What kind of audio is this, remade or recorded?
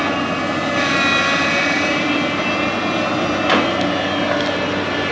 recorded